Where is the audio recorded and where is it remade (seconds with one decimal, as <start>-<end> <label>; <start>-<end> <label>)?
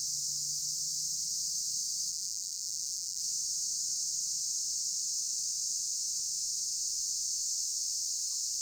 0.0-2.1 recorded; 2.1-3.2 remade; 3.2-8.6 recorded